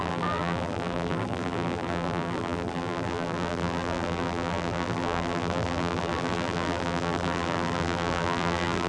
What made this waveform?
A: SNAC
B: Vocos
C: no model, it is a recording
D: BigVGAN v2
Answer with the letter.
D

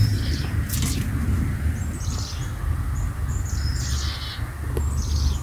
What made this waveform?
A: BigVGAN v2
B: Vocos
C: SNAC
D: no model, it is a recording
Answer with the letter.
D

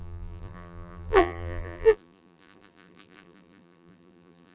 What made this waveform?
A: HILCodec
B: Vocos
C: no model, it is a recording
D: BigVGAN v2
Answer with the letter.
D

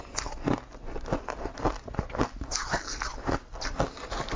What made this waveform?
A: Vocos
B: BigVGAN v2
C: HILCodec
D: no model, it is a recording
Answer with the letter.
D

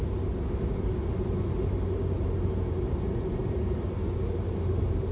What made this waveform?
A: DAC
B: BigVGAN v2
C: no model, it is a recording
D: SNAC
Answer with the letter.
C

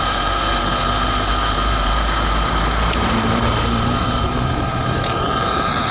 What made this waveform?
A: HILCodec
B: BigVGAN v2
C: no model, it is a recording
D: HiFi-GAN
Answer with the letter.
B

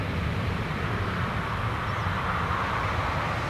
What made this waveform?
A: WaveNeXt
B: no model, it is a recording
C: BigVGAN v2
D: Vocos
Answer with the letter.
C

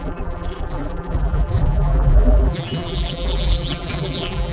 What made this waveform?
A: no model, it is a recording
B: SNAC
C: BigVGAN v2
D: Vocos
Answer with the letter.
C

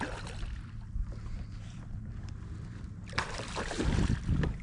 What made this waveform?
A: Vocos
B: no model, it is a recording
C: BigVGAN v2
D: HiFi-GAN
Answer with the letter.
C